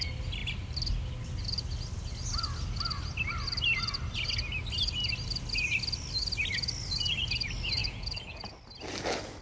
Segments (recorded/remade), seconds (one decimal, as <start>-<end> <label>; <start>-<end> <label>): 0.0-7.8 recorded; 7.8-8.5 remade; 8.5-9.4 recorded